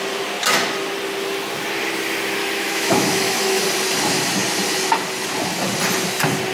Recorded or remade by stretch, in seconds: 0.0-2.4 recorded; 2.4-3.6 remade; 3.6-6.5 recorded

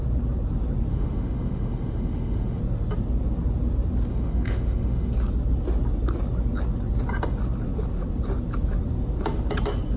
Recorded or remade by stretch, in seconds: 0.0-0.9 recorded; 0.9-2.6 remade; 2.6-4.1 recorded; 4.1-5.1 remade; 5.1-10.0 recorded

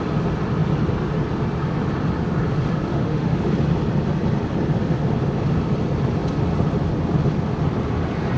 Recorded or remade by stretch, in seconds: 0.0-2.9 recorded; 2.9-3.5 remade; 3.5-8.4 recorded

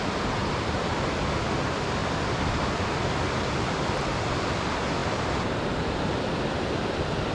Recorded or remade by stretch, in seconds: 0.0-7.3 recorded

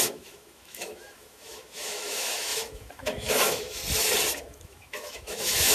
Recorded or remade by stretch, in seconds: 0.0-3.8 remade; 3.8-4.3 recorded; 4.3-5.7 remade

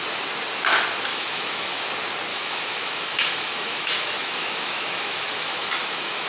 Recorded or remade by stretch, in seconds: 0.0-1.1 recorded; 1.1-1.8 remade; 1.8-2.3 recorded; 2.3-6.3 remade